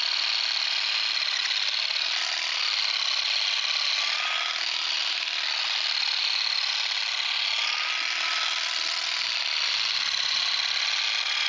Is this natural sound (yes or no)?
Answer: yes